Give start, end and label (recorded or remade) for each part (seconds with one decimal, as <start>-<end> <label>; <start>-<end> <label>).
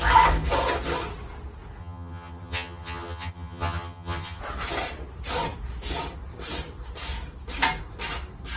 0.0-1.8 recorded; 1.8-4.4 remade; 4.4-8.6 recorded